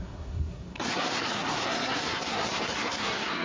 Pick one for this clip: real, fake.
fake